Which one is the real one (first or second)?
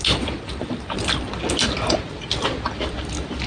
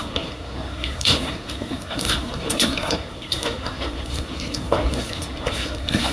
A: first